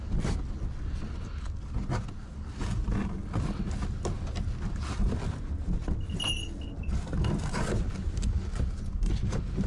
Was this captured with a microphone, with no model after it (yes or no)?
yes